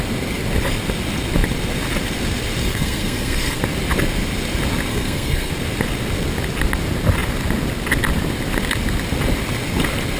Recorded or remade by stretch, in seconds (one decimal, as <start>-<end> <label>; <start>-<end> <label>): 0.0-2.6 recorded; 2.6-3.6 remade; 3.6-4.9 recorded; 4.9-5.5 remade; 5.5-10.2 recorded